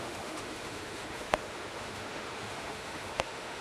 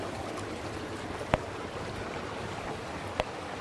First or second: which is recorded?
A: second